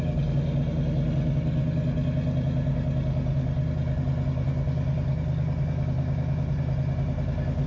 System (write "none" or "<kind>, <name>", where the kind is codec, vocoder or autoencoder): none